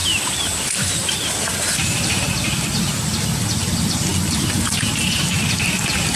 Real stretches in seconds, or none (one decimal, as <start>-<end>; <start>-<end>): 2.3-4.1; 5.2-6.2